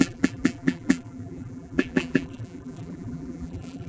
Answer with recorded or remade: remade